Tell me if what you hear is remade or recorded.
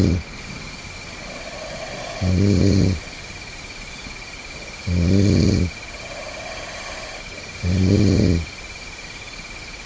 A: recorded